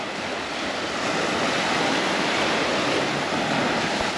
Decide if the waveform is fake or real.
real